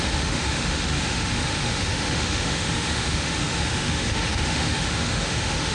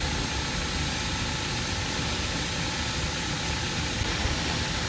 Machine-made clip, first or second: first